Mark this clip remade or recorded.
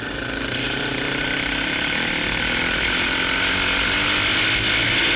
recorded